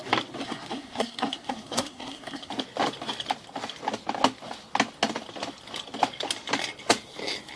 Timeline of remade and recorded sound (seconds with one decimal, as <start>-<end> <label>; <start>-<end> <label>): 0.0-0.4 recorded; 0.4-2.5 remade; 2.5-7.6 recorded